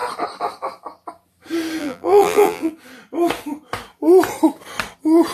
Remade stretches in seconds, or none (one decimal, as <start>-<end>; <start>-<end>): 1.8-2.7